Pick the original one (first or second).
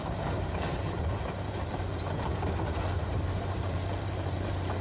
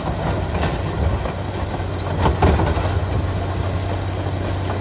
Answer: second